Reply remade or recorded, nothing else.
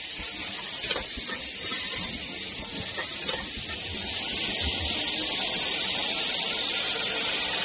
recorded